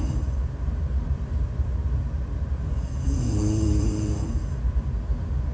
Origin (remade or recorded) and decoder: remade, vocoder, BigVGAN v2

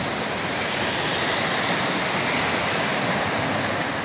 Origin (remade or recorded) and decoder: recorded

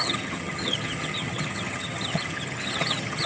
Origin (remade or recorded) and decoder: remade, vocoder, HiFi-GAN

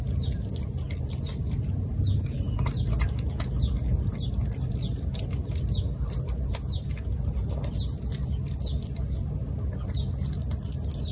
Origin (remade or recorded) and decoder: recorded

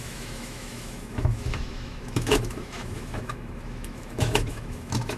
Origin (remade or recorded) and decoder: remade, autoencoder, DAC-VAE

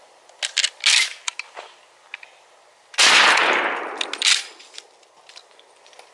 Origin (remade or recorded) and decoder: recorded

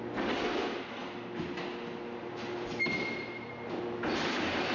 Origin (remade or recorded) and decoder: recorded